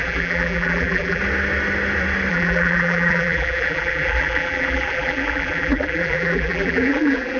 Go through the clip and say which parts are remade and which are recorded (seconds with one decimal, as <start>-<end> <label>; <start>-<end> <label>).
0.0-1.2 remade; 1.2-2.3 recorded; 2.3-7.4 remade